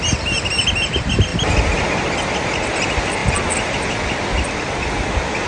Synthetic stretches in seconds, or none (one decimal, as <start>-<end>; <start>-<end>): none